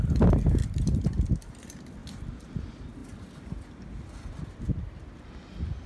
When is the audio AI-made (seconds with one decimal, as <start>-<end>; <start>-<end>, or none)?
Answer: 0.6-1.5; 2.0-2.5